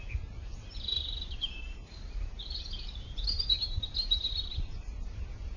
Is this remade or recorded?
remade